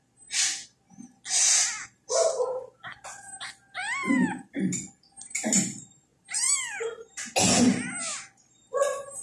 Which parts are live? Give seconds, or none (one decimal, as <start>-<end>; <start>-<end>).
0.0-1.8; 2.3-3.8; 4.6-9.2